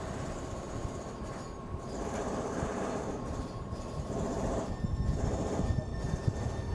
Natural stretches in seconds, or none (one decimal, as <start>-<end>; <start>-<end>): 0.0-6.7